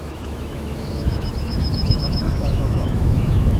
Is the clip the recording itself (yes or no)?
no